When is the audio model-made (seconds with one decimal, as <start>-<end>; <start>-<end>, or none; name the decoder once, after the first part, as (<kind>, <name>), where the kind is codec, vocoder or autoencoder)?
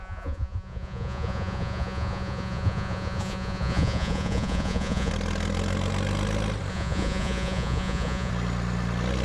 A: 0.0-5.1 (vocoder, Vocos); 6.7-8.3